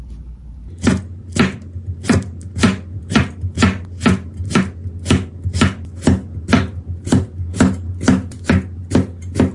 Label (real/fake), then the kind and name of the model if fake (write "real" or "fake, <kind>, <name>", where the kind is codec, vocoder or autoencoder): real